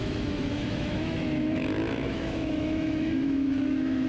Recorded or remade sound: remade